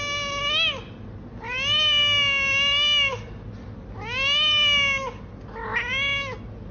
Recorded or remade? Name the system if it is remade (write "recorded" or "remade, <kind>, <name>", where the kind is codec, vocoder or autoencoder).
recorded